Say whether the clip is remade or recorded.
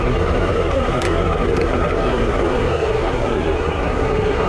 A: remade